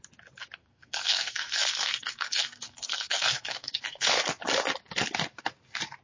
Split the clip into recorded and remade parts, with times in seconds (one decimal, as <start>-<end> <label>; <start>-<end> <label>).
0.0-0.6 recorded; 0.6-4.2 remade; 4.2-6.0 recorded